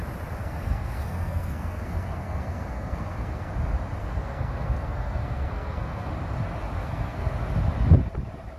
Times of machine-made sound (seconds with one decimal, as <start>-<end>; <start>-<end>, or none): 0.4-3.5; 4.0-6.1; 6.8-7.3